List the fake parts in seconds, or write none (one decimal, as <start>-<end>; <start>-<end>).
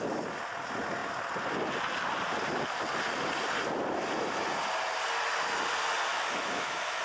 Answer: 6.1-7.0